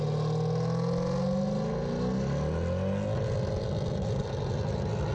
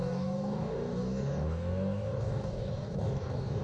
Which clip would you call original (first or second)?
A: first